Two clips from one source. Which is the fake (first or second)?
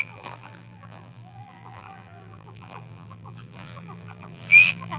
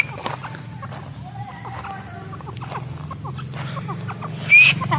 first